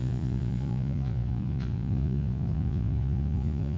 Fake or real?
fake